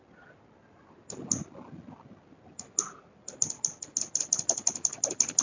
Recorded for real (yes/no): yes